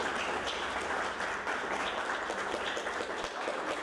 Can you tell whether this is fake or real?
real